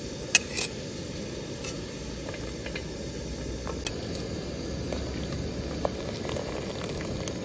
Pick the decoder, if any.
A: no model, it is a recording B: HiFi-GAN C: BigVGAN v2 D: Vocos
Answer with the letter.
A